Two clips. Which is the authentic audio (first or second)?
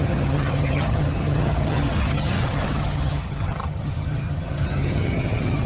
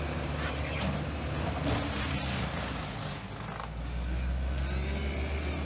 second